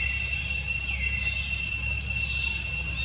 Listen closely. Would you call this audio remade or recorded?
recorded